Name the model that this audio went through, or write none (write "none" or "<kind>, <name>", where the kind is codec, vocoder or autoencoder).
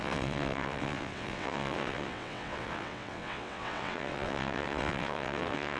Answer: vocoder, WaveNeXt